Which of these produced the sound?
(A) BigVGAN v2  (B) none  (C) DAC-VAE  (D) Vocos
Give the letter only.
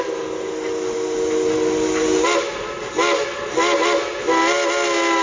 B